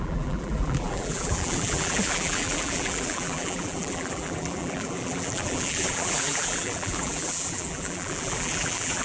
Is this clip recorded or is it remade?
remade